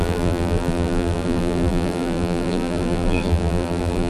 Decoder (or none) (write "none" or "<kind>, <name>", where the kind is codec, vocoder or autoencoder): vocoder, BigVGAN v2